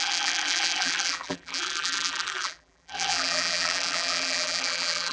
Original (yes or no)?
no